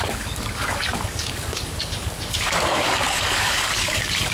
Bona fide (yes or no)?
no